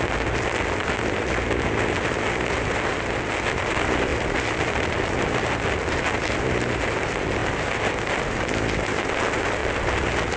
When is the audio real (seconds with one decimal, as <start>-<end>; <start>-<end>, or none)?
0.0-10.4